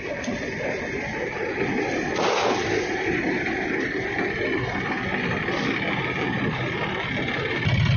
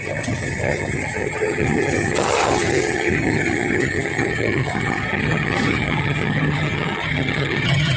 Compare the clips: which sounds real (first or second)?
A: first